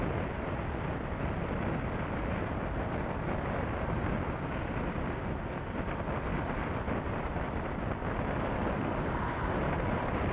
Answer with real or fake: real